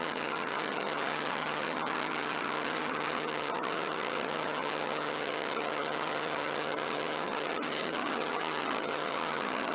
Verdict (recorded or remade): remade